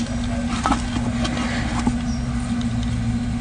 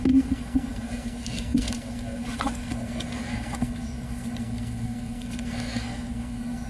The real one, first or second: first